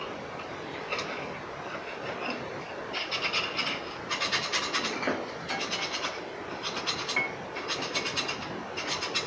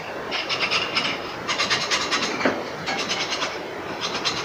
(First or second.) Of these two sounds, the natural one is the first